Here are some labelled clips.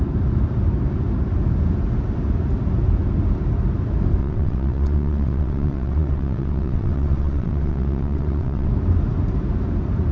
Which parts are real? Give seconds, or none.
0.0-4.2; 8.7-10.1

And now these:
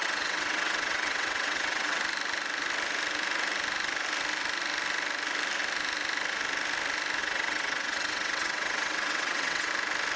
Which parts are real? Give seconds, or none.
2.0-7.2; 9.7-10.2

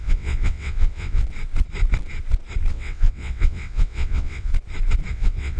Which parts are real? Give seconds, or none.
1.2-2.7; 4.5-5.1